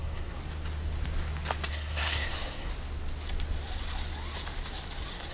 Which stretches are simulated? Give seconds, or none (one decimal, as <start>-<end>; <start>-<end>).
0.0-0.4; 1.7-2.7